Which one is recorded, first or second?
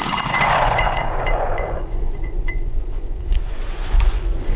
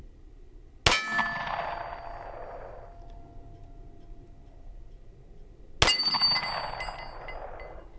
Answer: second